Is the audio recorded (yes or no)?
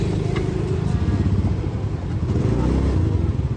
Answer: yes